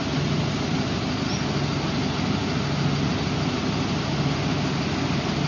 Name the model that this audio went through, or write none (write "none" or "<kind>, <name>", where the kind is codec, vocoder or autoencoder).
none